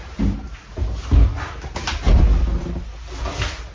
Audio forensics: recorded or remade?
recorded